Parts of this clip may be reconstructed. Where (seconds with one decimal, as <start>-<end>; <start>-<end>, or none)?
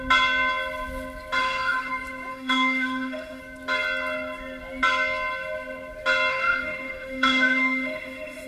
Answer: 1.4-1.9; 2.3-3.4; 6.3-8.5